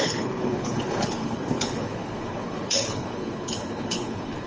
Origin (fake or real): fake